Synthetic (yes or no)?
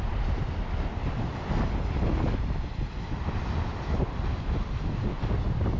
no